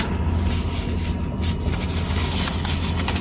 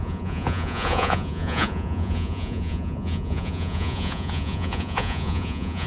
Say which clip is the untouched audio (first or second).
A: first